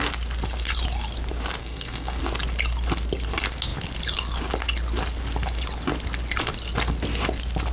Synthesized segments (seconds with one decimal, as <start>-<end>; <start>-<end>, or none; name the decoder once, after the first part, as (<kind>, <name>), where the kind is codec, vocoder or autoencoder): 1.6-2.2 (codec, SNAC)